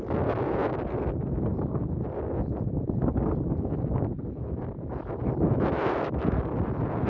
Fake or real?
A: real